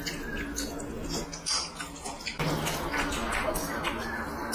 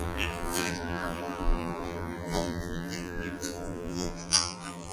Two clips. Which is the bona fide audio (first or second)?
first